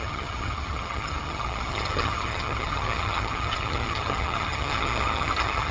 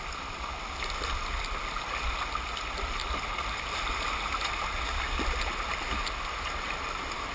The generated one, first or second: first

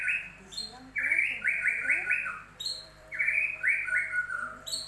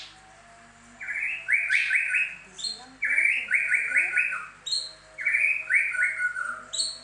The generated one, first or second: first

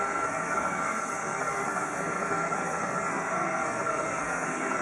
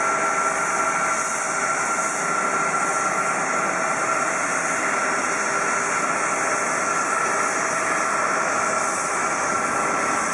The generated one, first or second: first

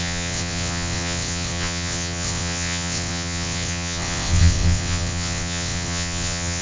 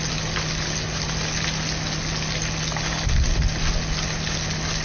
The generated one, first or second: first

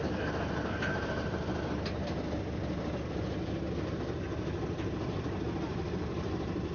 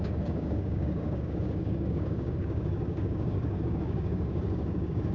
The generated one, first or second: second